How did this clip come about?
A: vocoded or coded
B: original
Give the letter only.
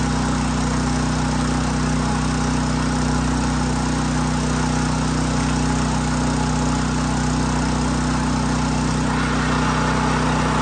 B